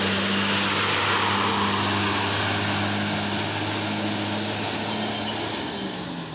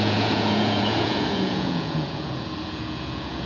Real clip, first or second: first